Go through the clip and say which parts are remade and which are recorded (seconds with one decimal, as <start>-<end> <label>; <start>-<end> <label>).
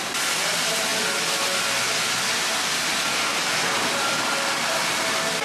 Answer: 0.0-5.4 recorded